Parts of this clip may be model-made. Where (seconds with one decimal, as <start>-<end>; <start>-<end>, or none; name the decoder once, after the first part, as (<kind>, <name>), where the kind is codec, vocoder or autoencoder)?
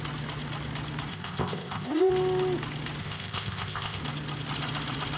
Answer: 1.1-2.1 (codec, ZipCodec); 3.0-4.0